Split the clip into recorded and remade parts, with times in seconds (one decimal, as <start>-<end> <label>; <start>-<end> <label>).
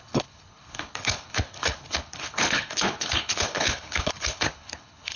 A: 0.0-5.2 remade